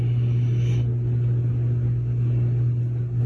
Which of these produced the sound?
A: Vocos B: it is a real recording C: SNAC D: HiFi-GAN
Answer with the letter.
B